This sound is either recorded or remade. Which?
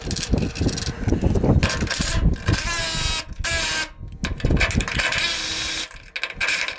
recorded